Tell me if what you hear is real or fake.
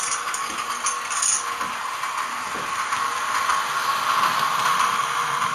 real